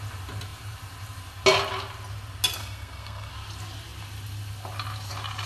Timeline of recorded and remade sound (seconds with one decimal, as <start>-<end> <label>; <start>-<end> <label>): 0.0-2.6 recorded; 2.6-3.3 remade; 3.3-5.5 recorded